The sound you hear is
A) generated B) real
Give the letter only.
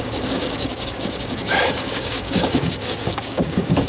A